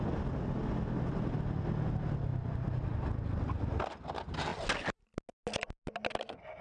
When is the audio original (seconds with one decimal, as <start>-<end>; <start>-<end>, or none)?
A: 0.0-6.6

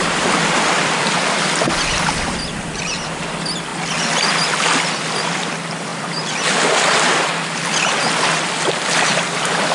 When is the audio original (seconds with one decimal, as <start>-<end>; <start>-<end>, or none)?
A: 3.7-5.0

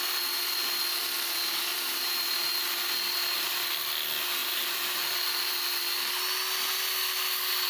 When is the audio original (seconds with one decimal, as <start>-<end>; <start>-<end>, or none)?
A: 0.0-1.7; 2.5-4.4; 5.3-7.7

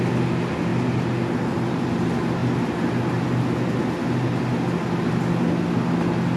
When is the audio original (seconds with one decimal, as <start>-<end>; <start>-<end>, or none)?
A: 0.0-6.4

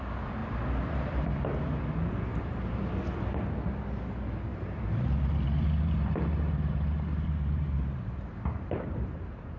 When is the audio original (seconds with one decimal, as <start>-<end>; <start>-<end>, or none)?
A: 0.0-0.4; 1.3-2.3; 2.9-4.5

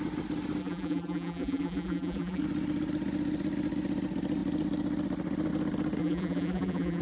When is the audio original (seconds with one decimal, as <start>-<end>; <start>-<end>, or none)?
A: 0.0-0.6; 2.4-6.0

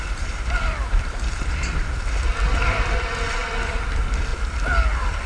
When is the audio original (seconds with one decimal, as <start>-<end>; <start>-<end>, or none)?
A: 4.3-5.3

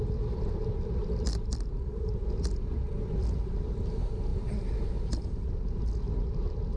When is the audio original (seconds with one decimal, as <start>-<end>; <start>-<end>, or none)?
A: 0.0-1.0; 2.1-6.8